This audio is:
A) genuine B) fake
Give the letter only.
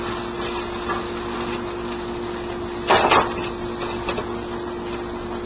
A